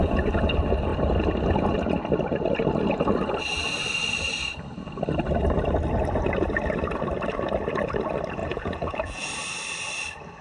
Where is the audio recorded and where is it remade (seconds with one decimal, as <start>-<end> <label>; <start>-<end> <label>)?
0.0-8.4 recorded; 8.4-9.3 remade; 9.3-10.4 recorded